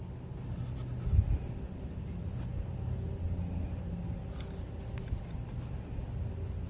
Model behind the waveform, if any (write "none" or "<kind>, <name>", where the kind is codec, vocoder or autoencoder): none